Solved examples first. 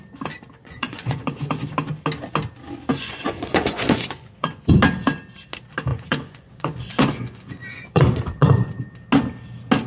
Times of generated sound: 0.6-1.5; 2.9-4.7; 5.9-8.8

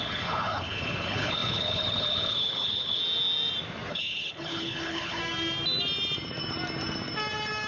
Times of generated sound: 0.0-3.0; 3.9-5.2